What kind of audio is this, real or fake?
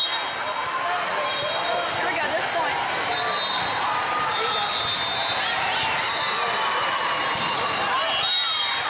real